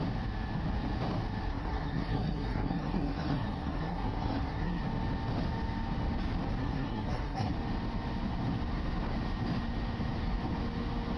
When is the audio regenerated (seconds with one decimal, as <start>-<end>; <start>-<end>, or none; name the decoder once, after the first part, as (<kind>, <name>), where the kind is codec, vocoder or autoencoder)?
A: 1.5-4.8 (codec, SNAC); 6.6-7.5